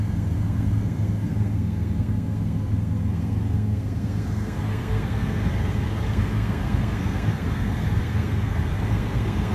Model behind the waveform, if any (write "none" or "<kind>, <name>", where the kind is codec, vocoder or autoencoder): codec, SNAC